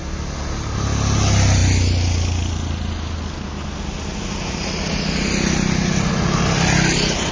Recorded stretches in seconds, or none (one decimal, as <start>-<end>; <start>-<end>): 0.0-7.3